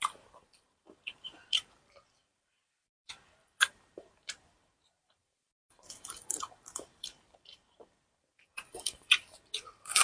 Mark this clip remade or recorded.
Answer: remade